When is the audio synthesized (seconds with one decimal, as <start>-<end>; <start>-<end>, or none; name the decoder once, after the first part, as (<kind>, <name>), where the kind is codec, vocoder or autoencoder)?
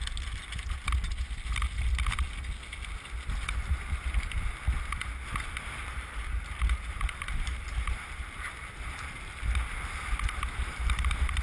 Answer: 3.7-4.5 (vocoder, BigVGAN v2); 5.8-9.5